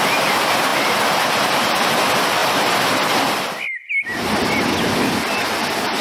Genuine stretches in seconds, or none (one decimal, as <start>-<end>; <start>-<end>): 0.0-6.0